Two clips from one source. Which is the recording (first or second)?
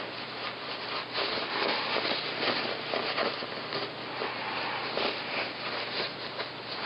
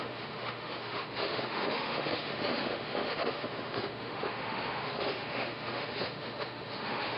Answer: first